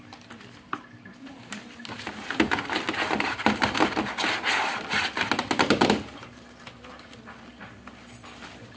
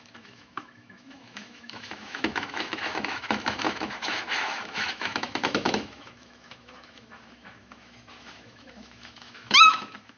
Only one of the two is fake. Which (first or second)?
second